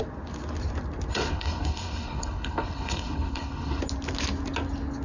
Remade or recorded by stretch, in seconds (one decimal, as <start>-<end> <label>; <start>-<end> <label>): 0.0-1.1 recorded; 1.1-3.8 remade; 3.8-5.0 recorded